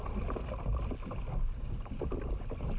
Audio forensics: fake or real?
real